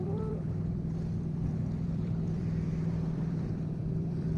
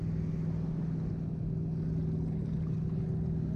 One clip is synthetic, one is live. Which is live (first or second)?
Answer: second